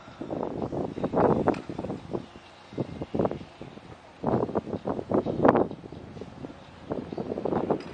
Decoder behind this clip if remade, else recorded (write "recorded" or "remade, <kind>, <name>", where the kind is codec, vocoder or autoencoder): recorded